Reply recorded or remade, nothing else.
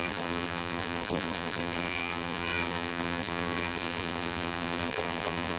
remade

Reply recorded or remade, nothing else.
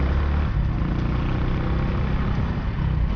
recorded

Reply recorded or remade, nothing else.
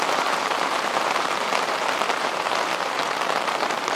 remade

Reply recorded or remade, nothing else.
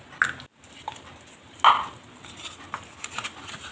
recorded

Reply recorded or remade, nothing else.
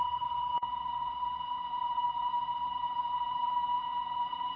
remade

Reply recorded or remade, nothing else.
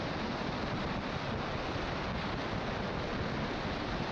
recorded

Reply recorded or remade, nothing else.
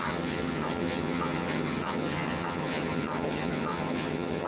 remade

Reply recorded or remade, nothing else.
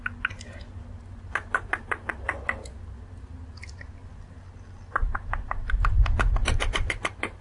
recorded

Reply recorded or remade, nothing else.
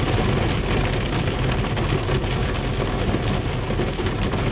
recorded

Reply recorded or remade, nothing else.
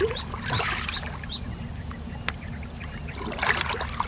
remade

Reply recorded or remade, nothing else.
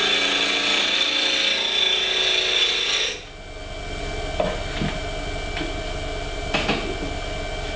recorded